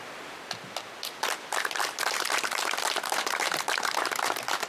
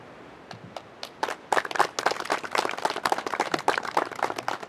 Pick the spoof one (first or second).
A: first